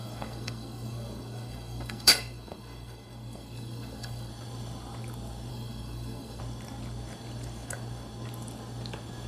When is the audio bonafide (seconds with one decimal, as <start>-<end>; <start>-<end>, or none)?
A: 4.3-5.5; 6.4-9.3